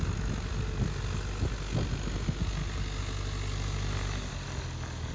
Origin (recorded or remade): recorded